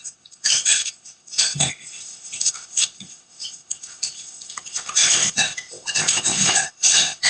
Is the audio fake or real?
fake